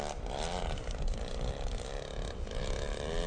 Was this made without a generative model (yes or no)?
yes